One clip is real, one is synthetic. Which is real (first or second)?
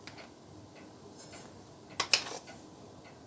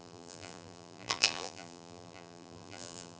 first